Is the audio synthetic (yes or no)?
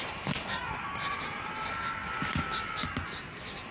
no